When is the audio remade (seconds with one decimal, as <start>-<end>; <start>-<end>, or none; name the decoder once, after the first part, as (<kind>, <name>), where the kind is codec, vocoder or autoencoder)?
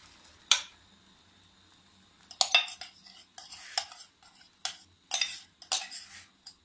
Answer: none